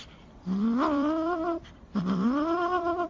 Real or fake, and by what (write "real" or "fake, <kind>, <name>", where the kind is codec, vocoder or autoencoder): fake, vocoder, BigVGAN v2